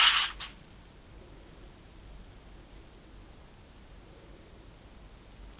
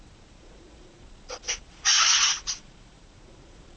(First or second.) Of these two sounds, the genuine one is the first